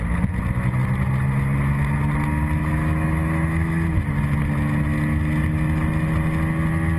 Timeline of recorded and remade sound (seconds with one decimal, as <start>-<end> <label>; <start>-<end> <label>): 0.0-2.6 recorded; 2.6-4.2 remade; 4.2-7.0 recorded